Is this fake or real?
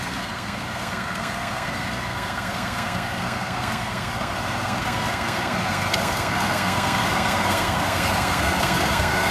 fake